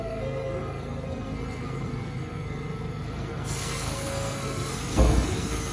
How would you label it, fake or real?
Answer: fake